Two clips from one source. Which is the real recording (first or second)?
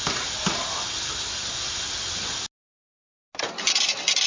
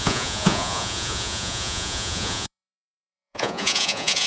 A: first